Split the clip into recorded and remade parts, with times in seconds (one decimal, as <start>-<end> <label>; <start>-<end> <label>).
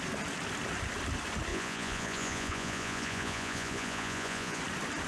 0.0-1.5 recorded; 1.5-4.6 remade; 4.6-5.1 recorded